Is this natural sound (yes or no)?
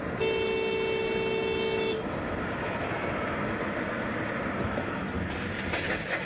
yes